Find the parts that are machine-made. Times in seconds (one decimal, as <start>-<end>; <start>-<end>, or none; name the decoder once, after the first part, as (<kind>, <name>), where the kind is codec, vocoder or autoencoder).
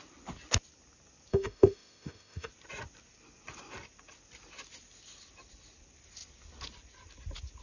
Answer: 1.3-2.5 (autoencoder, DAC-VAE)